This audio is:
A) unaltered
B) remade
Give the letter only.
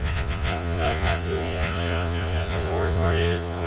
B